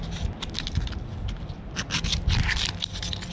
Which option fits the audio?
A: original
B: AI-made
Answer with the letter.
A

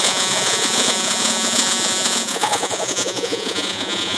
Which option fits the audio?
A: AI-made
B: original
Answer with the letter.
A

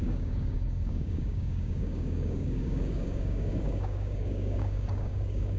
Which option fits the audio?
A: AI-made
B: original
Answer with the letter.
A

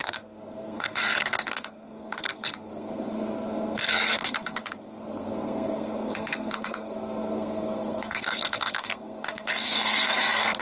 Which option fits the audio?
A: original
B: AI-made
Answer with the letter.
B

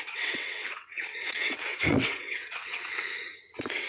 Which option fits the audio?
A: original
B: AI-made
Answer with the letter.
B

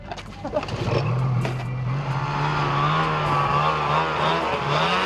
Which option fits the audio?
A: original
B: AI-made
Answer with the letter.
A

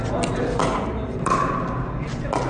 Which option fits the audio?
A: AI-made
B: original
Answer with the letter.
B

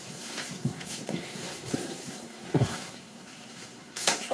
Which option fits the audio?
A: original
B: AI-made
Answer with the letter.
B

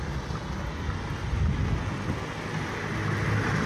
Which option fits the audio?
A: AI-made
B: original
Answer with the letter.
B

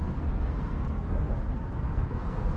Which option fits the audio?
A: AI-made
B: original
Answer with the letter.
A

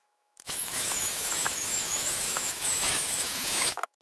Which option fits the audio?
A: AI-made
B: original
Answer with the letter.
A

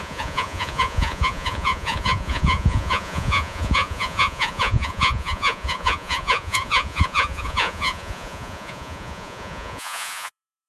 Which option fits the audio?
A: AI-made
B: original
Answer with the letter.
A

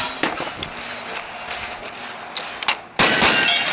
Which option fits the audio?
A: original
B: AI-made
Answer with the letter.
A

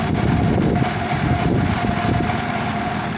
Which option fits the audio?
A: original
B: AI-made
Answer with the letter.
A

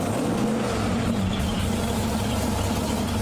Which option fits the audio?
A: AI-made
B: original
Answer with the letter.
B